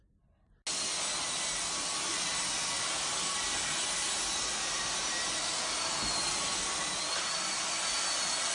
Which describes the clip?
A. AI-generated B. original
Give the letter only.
B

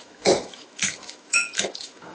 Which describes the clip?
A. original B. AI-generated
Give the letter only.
B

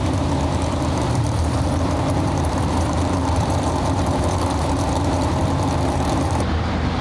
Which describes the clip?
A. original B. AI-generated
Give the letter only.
B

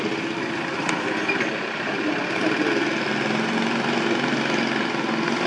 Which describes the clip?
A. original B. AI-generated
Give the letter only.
A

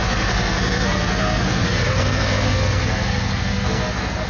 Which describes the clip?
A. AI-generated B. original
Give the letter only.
A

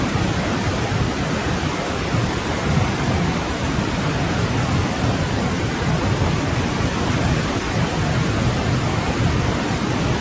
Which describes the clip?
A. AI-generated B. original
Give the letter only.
B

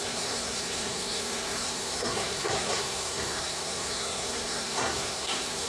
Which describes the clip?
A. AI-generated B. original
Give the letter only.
A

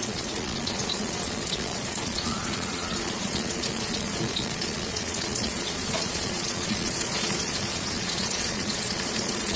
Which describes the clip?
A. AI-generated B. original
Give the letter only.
A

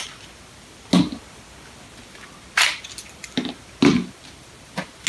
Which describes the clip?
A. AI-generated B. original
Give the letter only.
B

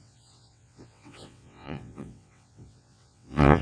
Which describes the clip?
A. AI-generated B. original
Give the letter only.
A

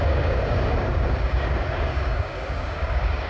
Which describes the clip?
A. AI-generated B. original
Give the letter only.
A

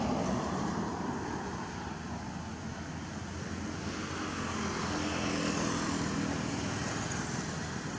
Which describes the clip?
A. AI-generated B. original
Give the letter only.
B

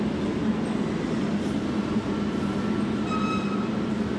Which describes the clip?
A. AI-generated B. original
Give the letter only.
B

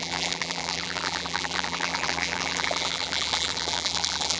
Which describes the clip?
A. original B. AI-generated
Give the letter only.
B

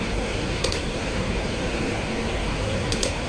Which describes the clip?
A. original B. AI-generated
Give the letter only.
B